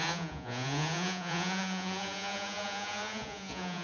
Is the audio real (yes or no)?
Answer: no